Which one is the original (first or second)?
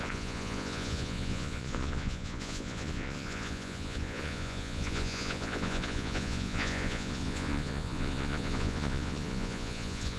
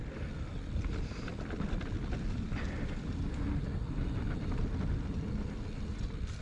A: second